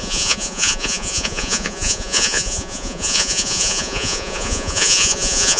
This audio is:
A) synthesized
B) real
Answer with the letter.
A